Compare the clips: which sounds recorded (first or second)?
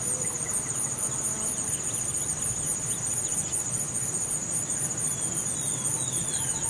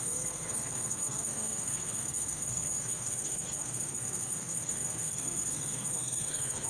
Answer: first